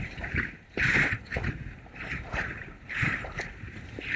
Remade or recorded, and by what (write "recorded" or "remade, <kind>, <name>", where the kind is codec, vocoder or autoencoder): recorded